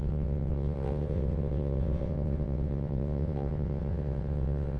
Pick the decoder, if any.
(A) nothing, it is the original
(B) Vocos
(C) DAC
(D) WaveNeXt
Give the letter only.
D